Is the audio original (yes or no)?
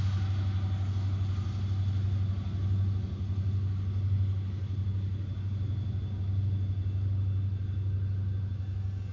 yes